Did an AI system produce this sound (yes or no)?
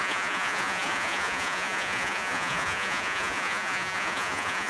yes